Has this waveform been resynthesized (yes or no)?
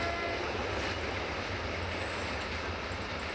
no